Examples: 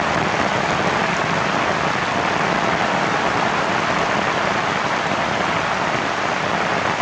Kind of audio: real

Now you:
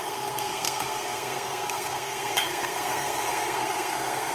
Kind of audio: fake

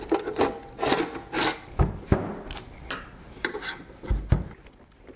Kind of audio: real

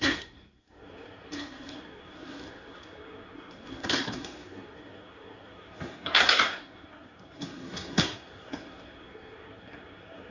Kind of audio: fake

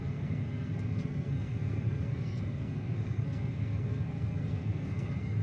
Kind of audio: fake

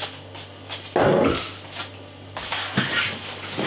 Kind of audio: real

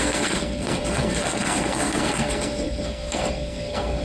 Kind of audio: fake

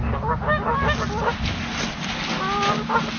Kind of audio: real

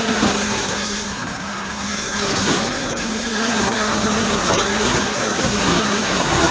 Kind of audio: fake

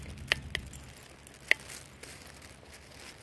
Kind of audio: real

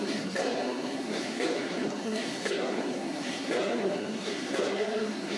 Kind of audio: fake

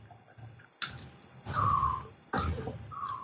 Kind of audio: real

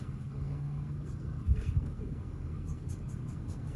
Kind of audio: fake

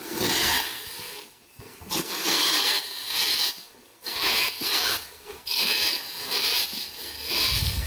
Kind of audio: fake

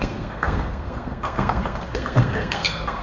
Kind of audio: fake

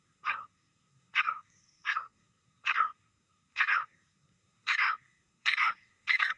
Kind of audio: fake